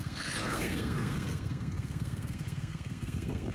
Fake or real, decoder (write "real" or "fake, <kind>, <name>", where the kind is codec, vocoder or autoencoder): fake, codec, SNAC